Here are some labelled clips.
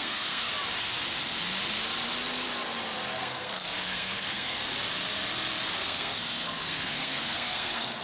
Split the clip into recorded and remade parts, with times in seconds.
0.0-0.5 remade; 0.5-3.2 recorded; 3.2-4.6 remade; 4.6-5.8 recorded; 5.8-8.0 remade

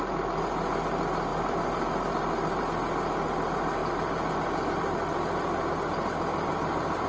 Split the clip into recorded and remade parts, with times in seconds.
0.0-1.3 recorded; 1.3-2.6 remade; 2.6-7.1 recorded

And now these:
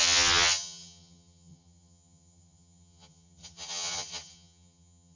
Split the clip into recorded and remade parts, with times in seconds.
0.0-5.2 remade

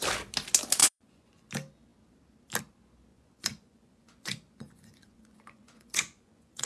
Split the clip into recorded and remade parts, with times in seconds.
0.0-0.8 recorded; 0.8-1.5 remade; 1.5-3.1 recorded; 3.1-6.7 remade

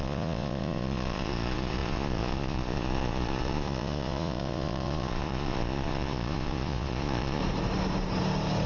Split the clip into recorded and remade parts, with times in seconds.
0.0-7.4 remade; 7.4-8.7 recorded

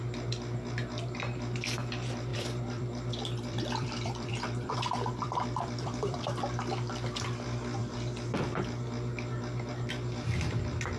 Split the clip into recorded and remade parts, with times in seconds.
0.0-2.3 recorded; 2.3-6.2 remade; 6.2-11.0 recorded